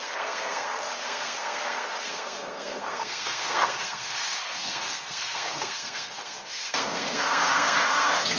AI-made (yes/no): yes